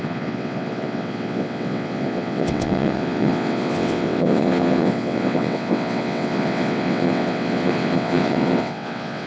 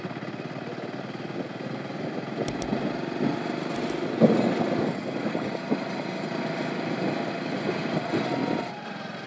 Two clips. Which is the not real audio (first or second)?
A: first